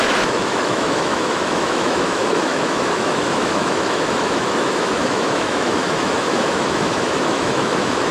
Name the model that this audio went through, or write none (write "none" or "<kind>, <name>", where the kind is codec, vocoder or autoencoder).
autoencoder, DAC-VAE